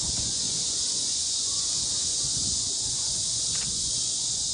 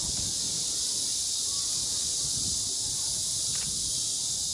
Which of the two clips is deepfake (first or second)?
first